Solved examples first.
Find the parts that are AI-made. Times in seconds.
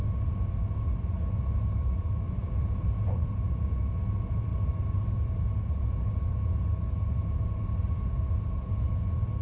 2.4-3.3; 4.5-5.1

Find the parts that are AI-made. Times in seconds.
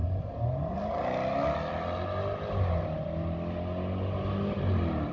none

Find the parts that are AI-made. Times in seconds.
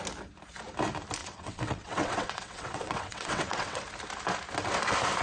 1.2-3.8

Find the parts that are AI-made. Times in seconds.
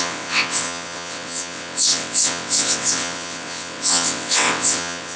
0.0-5.2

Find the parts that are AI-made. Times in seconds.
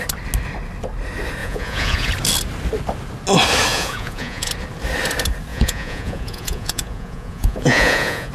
1.4-2.1; 3.7-4.5; 5.5-8.3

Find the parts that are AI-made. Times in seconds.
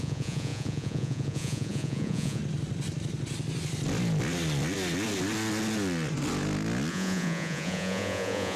0.0-2.4; 6.9-8.6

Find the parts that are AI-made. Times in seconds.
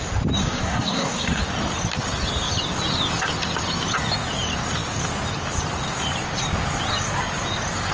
0.4-1.4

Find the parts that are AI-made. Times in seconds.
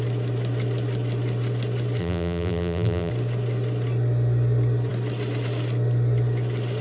2.0-3.1